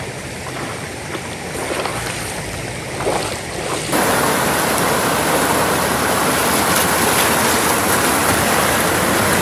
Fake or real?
real